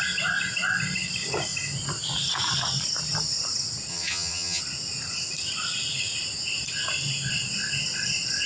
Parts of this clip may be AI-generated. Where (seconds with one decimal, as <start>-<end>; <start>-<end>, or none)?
3.9-4.6